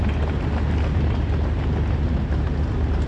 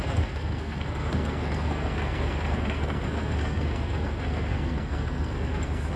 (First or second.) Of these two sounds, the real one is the first